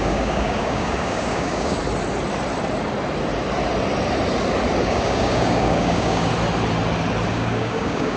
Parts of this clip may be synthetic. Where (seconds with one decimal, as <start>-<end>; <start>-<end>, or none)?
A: 0.0-1.8; 4.8-6.3; 7.3-8.2